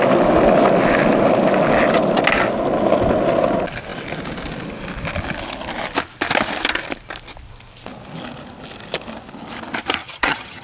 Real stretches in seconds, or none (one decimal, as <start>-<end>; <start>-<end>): 0.0-10.0